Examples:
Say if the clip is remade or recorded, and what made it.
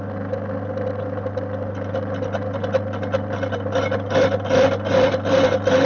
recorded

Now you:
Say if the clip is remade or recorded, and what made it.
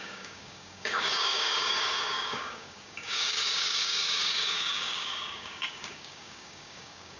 remade, codec, DAC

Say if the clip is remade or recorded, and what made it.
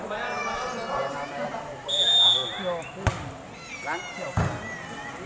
recorded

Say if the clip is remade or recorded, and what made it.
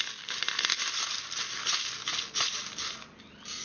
recorded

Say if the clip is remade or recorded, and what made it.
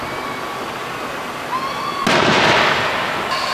recorded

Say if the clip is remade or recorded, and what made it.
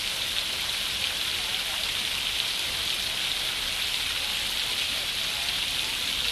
recorded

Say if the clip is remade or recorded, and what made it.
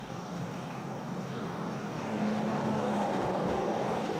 remade, codec, DAC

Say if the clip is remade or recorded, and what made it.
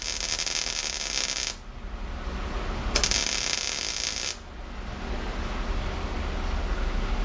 recorded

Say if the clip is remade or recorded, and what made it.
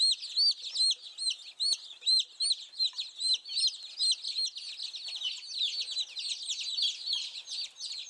recorded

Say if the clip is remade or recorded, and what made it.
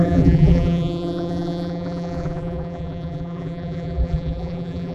remade, vocoder, BigVGAN v2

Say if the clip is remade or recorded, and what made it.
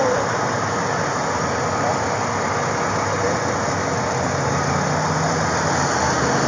recorded